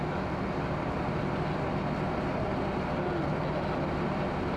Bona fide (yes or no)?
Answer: yes